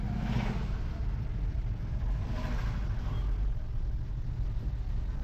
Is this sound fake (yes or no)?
no